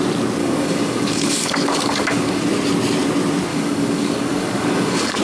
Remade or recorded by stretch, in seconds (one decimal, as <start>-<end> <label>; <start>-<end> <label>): 0.0-0.4 recorded; 0.4-2.4 remade; 2.4-3.5 recorded; 3.5-5.2 remade